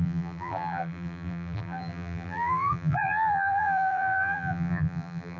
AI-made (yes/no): yes